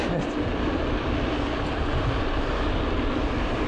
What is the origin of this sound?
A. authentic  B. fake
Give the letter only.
A